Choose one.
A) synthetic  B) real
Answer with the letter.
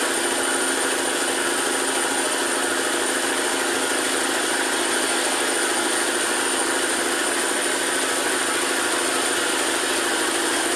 B